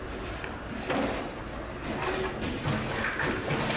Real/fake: real